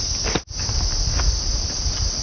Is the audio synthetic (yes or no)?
no